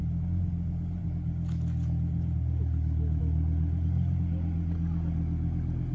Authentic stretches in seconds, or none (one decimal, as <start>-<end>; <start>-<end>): 0.0-5.9